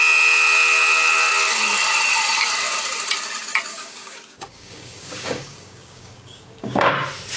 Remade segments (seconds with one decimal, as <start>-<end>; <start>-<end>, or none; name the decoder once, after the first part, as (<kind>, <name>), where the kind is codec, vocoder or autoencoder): 3.7-6.9 (codec, DAC)

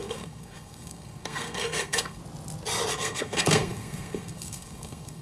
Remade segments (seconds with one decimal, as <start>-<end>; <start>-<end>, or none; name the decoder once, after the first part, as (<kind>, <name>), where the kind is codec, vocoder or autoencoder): 0.0-2.2 (codec, SNAC); 2.9-5.2

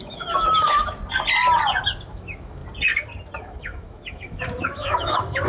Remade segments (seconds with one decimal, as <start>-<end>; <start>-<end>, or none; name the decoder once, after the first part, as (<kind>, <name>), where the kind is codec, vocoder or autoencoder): 0.0-1.0 (autoencoder, DAC-VAE); 2.1-2.6; 3.4-5.5